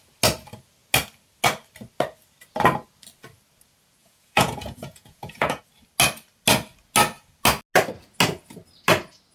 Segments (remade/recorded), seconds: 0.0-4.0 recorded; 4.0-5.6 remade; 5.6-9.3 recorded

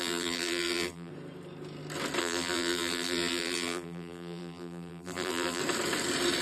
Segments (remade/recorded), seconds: 0.0-1.1 remade; 1.1-2.2 recorded; 2.2-5.6 remade; 5.6-6.4 recorded

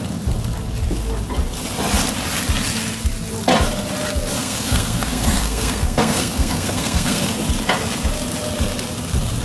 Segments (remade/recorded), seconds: 0.0-4.4 recorded; 4.4-7.3 remade; 7.3-9.4 recorded

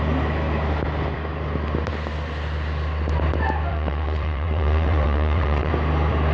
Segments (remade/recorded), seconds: 0.0-3.7 recorded; 3.7-5.7 remade; 5.7-6.3 recorded

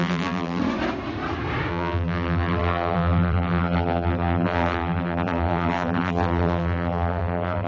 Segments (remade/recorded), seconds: 0.0-0.6 remade; 0.6-1.7 recorded; 1.7-7.7 remade

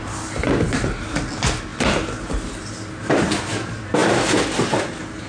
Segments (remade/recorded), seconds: 0.0-4.0 recorded; 4.0-4.7 remade; 4.7-5.3 recorded

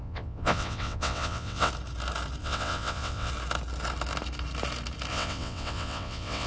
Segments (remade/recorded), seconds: 0.0-1.7 remade; 1.7-2.4 recorded; 2.4-3.3 remade; 3.3-5.1 recorded; 5.1-6.5 remade